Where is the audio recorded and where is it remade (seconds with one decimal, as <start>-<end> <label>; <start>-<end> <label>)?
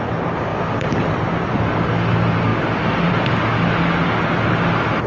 0.0-0.5 recorded; 0.5-1.6 remade; 1.6-5.1 recorded